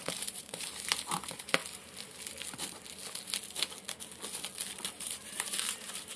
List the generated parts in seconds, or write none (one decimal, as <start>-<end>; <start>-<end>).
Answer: 0.0-1.6; 4.9-6.2